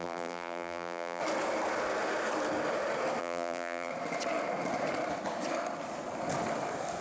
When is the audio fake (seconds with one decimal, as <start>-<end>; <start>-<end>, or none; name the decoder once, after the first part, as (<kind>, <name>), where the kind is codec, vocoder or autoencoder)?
0.0-1.2 (vocoder, BigVGAN v2); 3.2-3.9